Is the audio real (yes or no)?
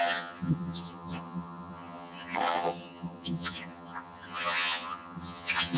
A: no